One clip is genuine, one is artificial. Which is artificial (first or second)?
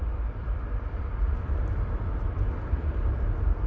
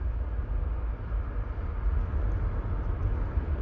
first